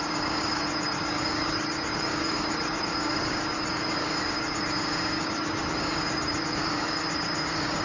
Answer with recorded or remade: remade